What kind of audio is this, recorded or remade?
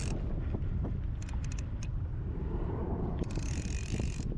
remade